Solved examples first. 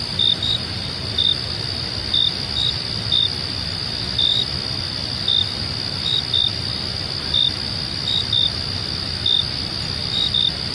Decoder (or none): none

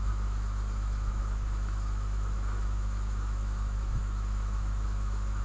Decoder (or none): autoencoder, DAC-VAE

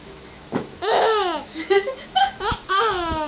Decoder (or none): autoencoder, DAC-VAE